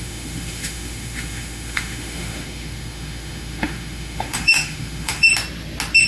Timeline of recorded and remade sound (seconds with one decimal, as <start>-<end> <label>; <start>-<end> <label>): 0.0-5.3 remade; 5.3-6.1 recorded